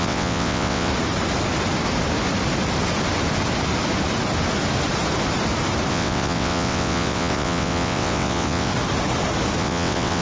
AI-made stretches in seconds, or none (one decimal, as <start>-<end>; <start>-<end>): 0.0-0.9; 5.9-8.7; 9.6-10.2